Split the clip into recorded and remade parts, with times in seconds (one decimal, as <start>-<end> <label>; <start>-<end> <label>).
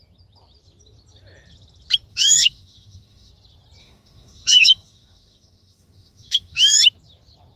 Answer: 0.0-2.1 recorded; 2.1-3.3 remade; 3.3-3.8 recorded; 3.8-6.8 remade; 6.8-7.6 recorded